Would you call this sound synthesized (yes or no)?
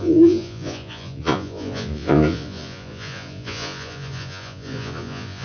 yes